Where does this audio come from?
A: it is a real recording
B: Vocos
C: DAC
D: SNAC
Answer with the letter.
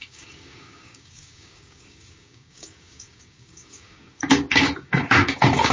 C